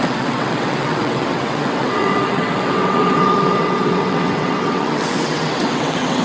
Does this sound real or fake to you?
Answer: fake